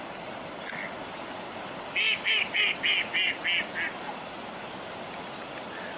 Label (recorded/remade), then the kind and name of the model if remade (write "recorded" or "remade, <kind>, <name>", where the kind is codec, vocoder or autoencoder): recorded